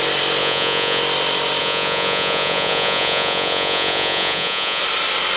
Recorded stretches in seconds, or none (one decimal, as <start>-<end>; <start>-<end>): 0.0-0.4; 1.0-1.6; 4.8-5.4